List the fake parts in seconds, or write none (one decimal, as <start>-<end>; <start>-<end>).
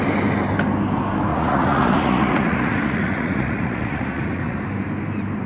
1.3-4.6